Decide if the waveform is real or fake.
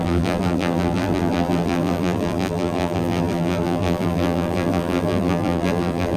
fake